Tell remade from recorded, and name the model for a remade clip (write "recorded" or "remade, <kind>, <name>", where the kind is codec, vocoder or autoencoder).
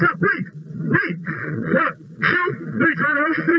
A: remade, vocoder, Vocos